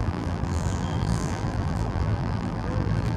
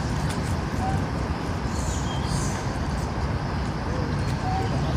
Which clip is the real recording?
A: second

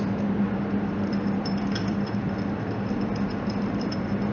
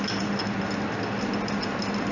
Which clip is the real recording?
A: second